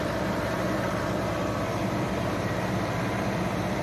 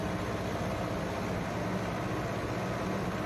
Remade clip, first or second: first